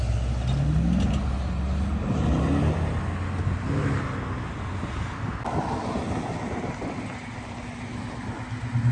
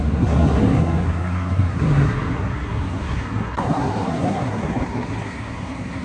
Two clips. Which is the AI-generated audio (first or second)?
second